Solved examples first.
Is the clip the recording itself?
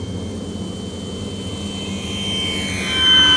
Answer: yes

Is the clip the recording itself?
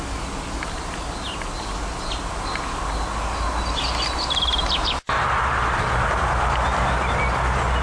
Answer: yes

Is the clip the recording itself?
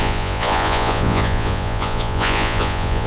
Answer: no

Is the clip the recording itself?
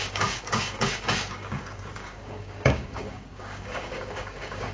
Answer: no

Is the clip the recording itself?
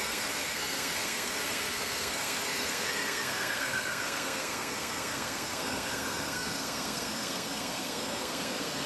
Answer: no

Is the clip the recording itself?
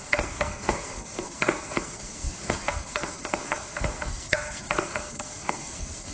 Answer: no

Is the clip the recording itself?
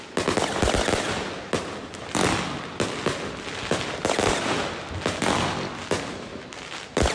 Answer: yes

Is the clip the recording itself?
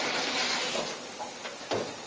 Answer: yes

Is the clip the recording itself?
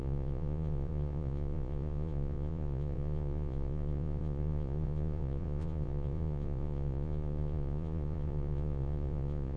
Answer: no